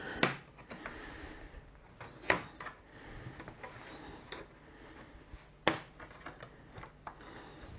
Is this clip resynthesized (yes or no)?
no